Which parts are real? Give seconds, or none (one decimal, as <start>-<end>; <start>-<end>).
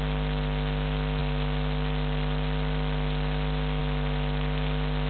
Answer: 0.0-5.1